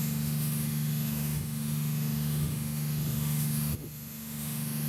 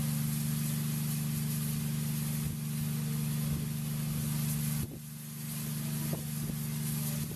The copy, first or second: first